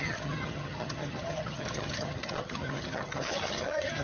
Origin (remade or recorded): remade